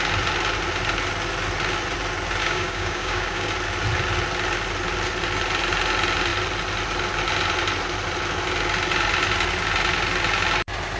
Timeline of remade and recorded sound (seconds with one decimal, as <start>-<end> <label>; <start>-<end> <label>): 0.0-2.4 recorded; 2.4-3.5 remade; 3.5-11.0 recorded

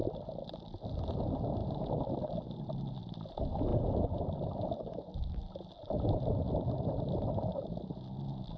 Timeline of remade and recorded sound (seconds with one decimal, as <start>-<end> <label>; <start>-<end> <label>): 0.0-8.6 recorded

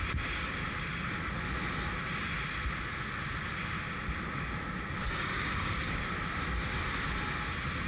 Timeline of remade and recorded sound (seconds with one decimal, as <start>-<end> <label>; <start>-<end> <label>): 0.0-5.0 recorded; 5.0-6.1 remade; 6.1-7.9 recorded

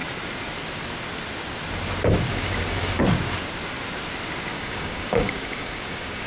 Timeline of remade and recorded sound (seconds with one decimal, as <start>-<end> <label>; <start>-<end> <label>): 0.0-2.3 recorded; 2.3-3.0 remade; 3.0-4.5 recorded; 4.5-6.3 remade

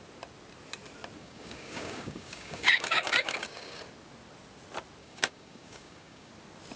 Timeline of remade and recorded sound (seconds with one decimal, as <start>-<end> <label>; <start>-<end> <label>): 0.0-1.2 recorded; 1.2-3.8 remade; 3.8-5.0 recorded; 5.0-6.3 remade; 6.3-6.8 recorded